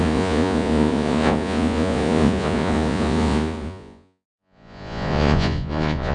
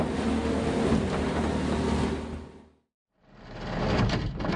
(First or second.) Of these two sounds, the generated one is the first